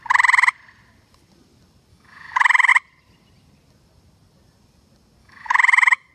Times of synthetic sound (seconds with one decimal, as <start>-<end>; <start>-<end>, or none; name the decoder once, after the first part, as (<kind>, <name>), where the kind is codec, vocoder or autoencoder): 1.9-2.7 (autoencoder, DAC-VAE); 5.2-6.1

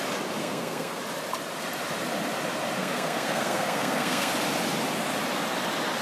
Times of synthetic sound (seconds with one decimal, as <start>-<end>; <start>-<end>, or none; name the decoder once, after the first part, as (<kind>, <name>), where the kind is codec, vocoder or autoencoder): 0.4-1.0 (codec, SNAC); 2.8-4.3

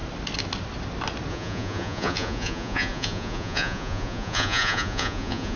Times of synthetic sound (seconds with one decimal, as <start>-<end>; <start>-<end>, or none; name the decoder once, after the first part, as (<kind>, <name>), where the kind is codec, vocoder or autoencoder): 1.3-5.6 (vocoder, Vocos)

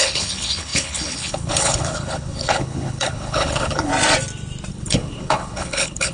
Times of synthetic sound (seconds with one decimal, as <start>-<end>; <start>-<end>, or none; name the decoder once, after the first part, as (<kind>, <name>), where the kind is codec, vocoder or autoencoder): 0.0-3.9 (codec, HILCodec); 4.7-6.1

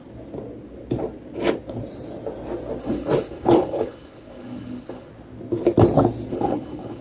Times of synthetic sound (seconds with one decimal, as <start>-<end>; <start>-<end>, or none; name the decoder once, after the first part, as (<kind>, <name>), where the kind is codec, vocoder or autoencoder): 2.8-5.1 (codec, HILCodec); 6.3-7.0